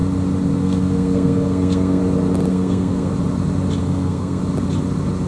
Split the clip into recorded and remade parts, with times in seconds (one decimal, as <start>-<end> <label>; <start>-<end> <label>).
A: 0.0-0.6 recorded; 0.6-2.0 remade; 2.0-2.5 recorded; 2.5-3.1 remade; 3.1-3.8 recorded; 3.8-4.4 remade; 4.4-5.3 recorded